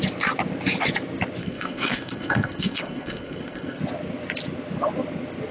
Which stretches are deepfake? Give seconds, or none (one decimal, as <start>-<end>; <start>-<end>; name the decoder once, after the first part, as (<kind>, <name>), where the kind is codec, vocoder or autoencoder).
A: 1.4-3.8 (codec, SNAC)